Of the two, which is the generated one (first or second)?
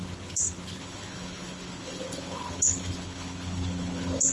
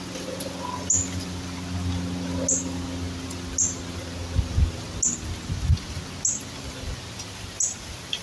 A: first